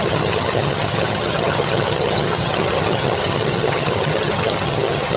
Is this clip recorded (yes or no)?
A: no